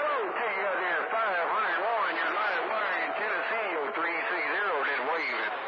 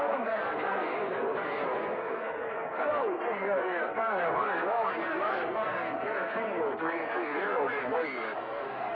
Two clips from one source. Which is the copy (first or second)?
second